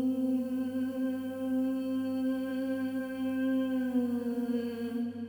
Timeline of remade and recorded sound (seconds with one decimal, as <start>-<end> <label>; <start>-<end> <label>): 0.0-5.3 recorded